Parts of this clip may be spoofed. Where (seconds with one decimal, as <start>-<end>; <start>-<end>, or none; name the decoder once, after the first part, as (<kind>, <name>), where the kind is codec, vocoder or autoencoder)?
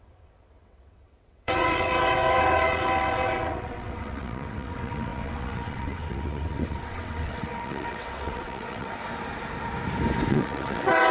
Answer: 0.0-9.0 (vocoder, WaveNeXt); 10.3-11.1